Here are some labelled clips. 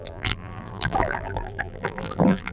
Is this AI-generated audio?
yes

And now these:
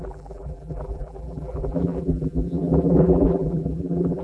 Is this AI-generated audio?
yes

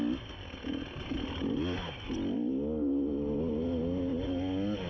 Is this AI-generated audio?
no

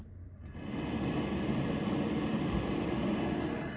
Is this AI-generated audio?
no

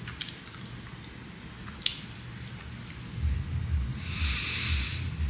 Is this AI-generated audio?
no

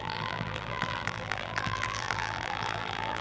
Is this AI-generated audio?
yes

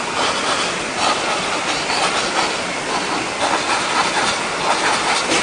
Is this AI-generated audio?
no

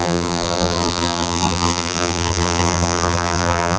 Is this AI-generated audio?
yes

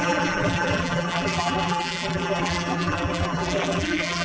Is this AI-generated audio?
yes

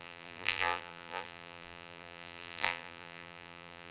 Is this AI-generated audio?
yes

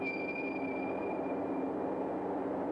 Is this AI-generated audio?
no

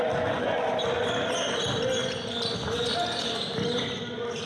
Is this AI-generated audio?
no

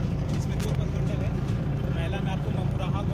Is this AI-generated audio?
yes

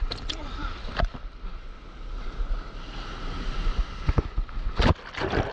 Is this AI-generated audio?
no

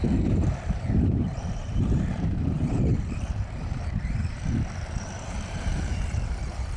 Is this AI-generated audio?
yes